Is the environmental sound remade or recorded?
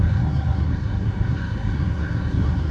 remade